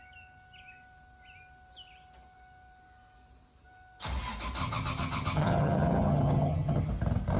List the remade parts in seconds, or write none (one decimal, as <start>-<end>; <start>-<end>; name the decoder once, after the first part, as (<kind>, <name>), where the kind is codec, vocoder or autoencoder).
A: 4.6-6.9 (vocoder, HiFi-GAN)

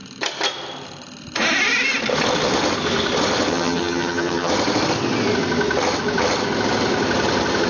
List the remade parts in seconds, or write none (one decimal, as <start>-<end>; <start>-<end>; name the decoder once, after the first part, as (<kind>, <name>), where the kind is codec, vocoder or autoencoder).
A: 3.5-4.5 (vocoder, HiFi-GAN)

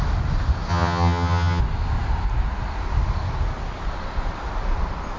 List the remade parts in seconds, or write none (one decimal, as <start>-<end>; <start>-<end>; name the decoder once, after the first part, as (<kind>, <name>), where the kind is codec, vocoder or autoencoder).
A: 0.7-1.6 (vocoder, HiFi-GAN)

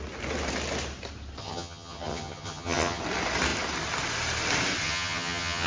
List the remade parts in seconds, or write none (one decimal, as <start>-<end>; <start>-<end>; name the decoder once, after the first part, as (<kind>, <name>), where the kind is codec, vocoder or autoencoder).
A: 1.4-3.0 (vocoder, HiFi-GAN); 4.8-5.7

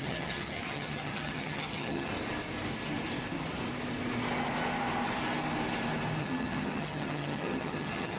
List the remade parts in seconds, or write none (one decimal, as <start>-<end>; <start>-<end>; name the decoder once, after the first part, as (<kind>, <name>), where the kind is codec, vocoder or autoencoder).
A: 0.0-2.1 (vocoder, HiFi-GAN); 6.2-8.2

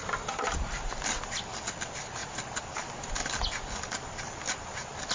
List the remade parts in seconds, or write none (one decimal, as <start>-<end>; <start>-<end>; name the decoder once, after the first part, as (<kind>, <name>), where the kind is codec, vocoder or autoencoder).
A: none